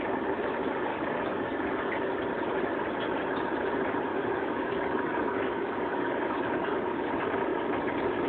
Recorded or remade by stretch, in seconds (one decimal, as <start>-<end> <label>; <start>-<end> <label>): 0.0-0.9 recorded; 0.9-1.9 remade; 1.9-4.1 recorded; 4.1-7.1 remade; 7.1-8.3 recorded